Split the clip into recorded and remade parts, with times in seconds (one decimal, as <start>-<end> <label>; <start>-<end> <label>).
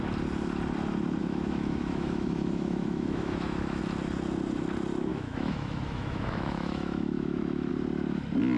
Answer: 0.0-1.2 recorded; 1.2-3.8 remade; 3.8-5.1 recorded; 5.1-7.7 remade; 7.7-8.6 recorded